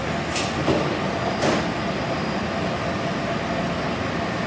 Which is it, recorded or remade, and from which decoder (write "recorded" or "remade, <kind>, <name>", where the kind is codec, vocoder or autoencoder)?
recorded